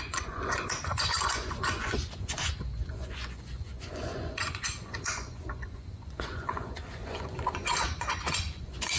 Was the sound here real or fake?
fake